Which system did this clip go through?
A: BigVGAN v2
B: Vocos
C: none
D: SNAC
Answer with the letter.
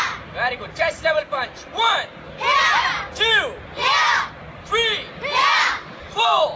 C